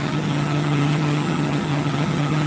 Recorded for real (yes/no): no